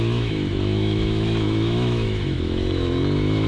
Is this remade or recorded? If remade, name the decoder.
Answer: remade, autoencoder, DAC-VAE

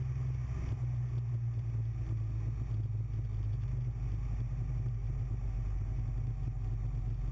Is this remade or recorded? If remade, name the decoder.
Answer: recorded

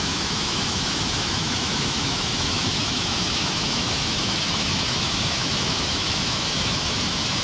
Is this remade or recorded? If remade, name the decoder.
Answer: remade, autoencoder, DAC-VAE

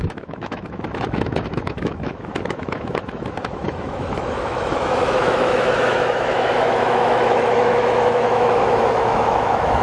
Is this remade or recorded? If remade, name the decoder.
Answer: remade, autoencoder, DAC-VAE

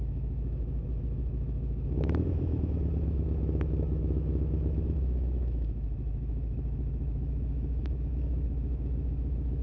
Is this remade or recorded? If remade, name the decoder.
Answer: remade, autoencoder, DAC-VAE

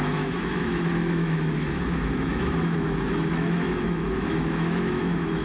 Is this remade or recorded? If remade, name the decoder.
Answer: remade, autoencoder, DAC-VAE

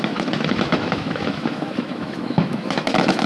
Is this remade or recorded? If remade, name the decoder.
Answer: remade, autoencoder, DAC-VAE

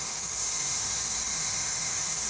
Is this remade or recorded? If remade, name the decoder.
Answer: remade, autoencoder, DAC-VAE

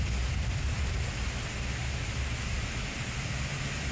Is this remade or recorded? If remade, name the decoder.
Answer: recorded